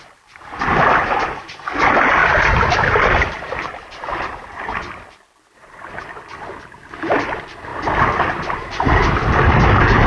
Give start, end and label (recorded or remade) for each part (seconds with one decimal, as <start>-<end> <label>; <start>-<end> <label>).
0.0-2.2 recorded; 2.2-6.0 remade; 6.0-10.1 recorded